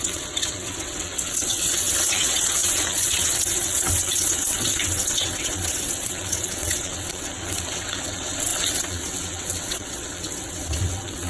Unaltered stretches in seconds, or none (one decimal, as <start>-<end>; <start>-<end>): none